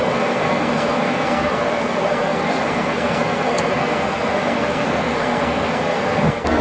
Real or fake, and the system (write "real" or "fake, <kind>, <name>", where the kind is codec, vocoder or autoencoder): fake, codec, SNAC